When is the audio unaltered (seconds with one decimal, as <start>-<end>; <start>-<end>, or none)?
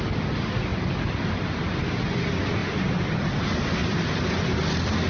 0.0-5.1